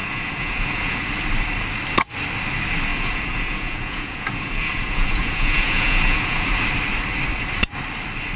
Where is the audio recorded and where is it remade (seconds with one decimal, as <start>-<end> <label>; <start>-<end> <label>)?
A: 0.0-1.1 remade; 1.1-2.9 recorded; 2.9-6.6 remade; 6.6-8.4 recorded